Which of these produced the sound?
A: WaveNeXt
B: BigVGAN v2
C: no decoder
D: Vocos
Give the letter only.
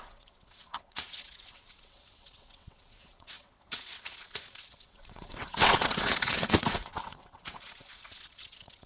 A